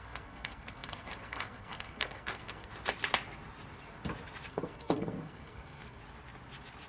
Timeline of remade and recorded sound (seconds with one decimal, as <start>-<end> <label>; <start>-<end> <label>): 0.0-2.7 remade; 2.7-4.5 recorded; 4.5-6.0 remade; 6.0-6.9 recorded